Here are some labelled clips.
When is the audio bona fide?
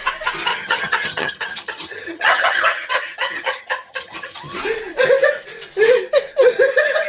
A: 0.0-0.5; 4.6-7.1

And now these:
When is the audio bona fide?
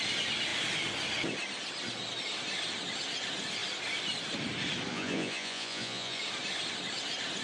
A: 0.0-4.9; 6.2-7.4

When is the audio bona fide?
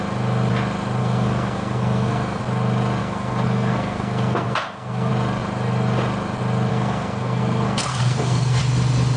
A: 0.0-1.0; 2.4-3.0; 5.1-6.7; 8.6-9.2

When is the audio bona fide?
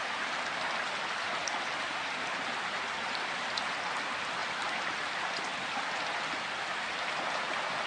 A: 0.0-7.9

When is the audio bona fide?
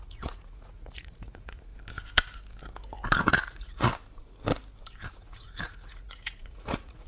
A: 1.7-3.2; 3.9-5.1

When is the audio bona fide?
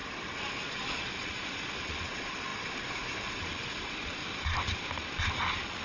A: 0.0-0.7; 4.2-5.3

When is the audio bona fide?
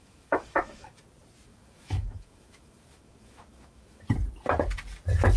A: 1.0-1.5; 4.0-5.4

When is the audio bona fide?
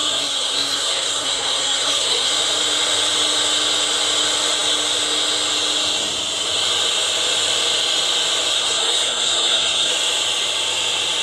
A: 2.3-8.5; 9.9-11.2